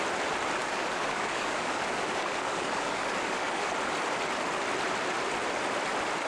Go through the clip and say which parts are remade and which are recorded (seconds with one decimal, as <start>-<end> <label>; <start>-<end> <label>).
0.0-0.6 recorded; 0.6-3.7 remade; 3.7-6.3 recorded